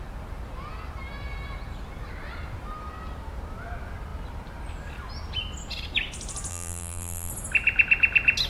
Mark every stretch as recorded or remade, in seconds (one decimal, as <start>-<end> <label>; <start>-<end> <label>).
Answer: 0.0-6.5 recorded; 6.5-7.3 remade; 7.3-8.5 recorded